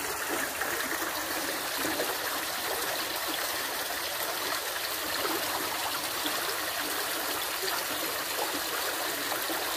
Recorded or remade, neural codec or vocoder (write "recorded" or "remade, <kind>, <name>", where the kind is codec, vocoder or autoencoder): recorded